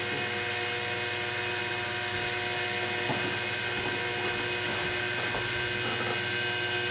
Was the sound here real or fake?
real